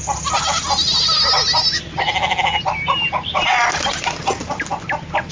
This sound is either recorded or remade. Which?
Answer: recorded